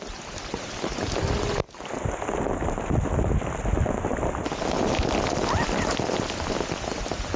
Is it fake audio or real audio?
real